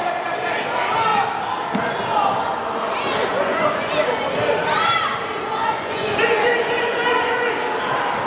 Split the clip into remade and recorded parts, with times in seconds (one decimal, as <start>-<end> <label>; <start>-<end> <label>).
0.0-3.3 recorded; 3.3-3.9 remade; 3.9-5.5 recorded; 5.5-7.5 remade; 7.5-8.3 recorded